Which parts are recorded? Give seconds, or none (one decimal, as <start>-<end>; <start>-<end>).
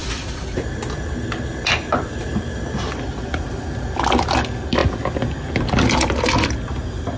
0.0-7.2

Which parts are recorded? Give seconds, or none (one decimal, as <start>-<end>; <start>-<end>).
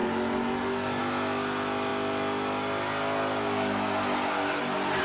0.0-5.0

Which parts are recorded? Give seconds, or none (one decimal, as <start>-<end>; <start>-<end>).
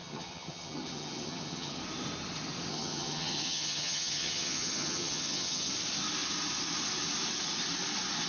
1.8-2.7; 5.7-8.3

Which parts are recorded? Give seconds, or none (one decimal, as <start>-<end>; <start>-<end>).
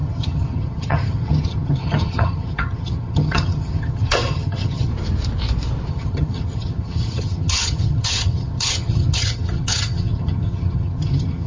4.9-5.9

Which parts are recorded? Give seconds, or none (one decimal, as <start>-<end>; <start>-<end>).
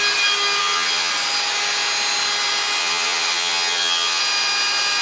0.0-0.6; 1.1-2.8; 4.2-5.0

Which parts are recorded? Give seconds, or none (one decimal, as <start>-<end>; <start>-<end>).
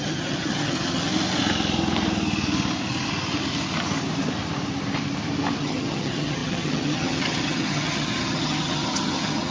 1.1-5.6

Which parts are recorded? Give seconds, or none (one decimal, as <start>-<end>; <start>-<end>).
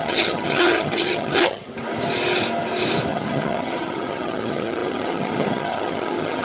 1.7-3.1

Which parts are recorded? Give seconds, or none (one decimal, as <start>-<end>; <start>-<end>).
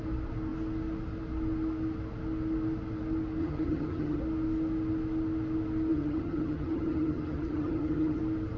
0.0-3.4; 4.2-5.9; 8.2-8.6